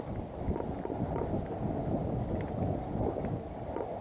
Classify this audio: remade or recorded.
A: recorded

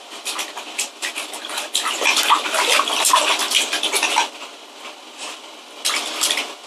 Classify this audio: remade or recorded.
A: recorded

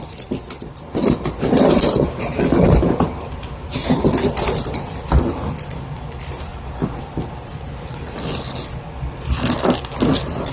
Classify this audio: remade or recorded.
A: recorded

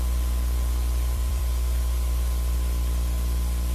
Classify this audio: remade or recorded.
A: remade